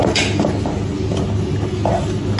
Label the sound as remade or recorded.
recorded